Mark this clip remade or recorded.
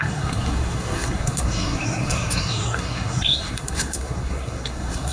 remade